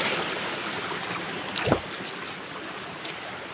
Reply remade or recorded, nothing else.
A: recorded